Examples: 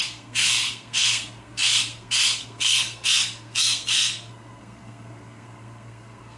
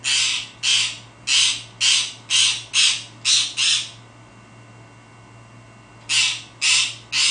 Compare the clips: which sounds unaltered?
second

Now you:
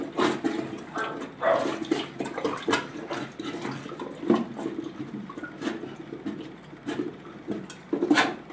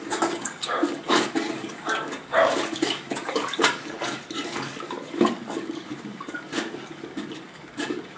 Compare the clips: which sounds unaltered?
first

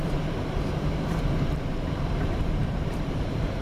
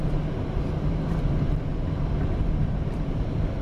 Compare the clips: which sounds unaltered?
second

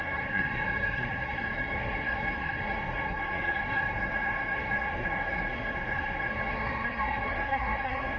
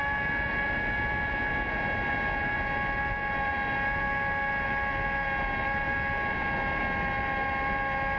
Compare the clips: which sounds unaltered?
second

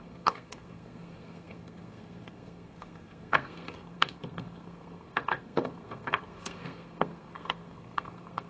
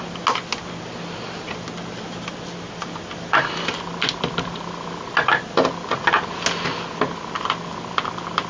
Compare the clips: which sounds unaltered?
second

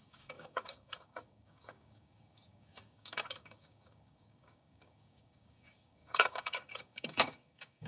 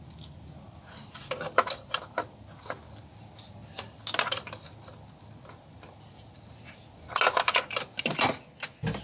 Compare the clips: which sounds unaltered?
second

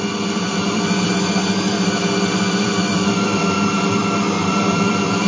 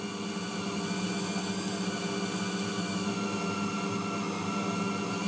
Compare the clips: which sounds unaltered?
second